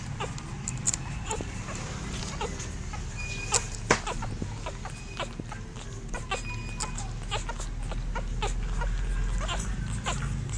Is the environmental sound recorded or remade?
recorded